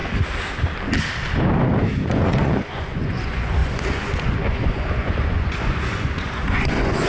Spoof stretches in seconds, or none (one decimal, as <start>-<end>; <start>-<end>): 2.0-7.1